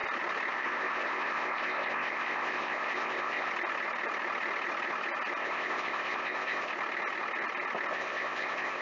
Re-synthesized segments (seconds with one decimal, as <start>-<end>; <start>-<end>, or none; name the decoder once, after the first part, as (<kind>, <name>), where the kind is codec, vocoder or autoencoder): 0.5-3.5 (codec, ZipCodec); 5.4-6.7; 7.9-8.8